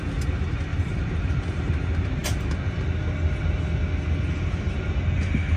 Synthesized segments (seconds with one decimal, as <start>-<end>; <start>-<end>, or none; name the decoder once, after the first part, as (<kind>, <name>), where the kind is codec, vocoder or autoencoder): 0.7-1.6 (vocoder, BigVGAN v2)